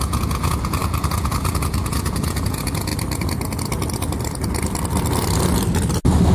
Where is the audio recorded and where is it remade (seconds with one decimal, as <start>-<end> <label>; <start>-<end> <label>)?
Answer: 0.0-2.9 remade; 2.9-6.3 recorded